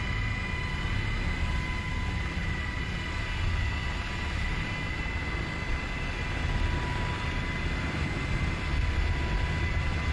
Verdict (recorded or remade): recorded